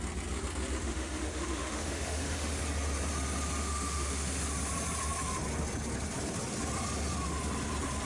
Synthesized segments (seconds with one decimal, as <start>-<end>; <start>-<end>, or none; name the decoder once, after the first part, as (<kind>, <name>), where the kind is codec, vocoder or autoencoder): 0.8-2.6 (autoencoder, DAC-VAE); 3.6-4.4